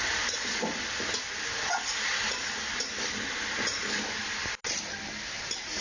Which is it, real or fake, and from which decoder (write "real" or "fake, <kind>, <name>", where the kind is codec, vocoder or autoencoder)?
real